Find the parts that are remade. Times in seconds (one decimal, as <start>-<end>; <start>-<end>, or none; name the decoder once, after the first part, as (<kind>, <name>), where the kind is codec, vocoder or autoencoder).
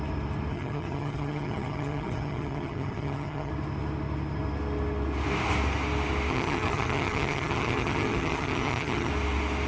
0.5-3.5 (vocoder, HiFi-GAN); 6.3-9.1